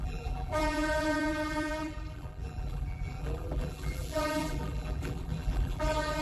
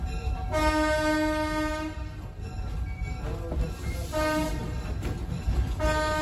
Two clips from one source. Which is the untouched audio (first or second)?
second